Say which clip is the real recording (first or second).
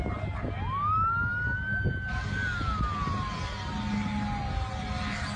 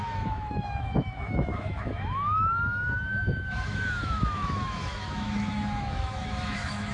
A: first